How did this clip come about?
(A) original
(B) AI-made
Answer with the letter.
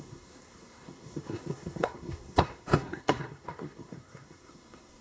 B